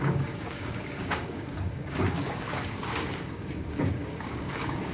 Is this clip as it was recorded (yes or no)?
no